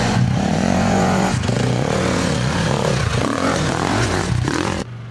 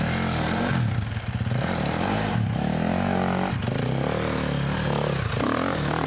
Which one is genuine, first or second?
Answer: second